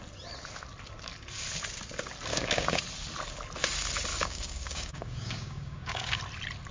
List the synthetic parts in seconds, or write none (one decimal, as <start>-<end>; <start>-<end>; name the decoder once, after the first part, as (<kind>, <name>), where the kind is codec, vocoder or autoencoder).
2.3-2.8 (codec, DAC); 4.1-6.2